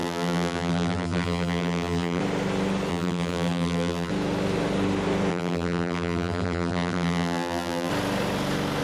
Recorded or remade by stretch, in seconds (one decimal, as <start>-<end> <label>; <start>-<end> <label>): 0.0-2.2 remade; 2.2-2.9 recorded; 2.9-4.1 remade; 4.1-5.3 recorded; 5.3-7.9 remade; 7.9-8.8 recorded